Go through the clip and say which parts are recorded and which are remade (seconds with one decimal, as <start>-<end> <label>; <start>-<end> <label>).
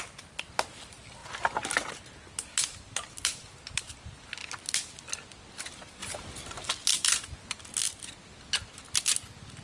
0.0-9.6 recorded